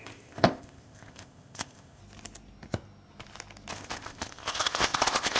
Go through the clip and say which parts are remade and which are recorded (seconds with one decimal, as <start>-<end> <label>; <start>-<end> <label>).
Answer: 0.0-2.0 remade; 2.0-3.7 recorded; 3.7-5.4 remade